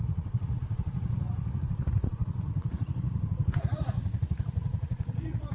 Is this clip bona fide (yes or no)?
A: no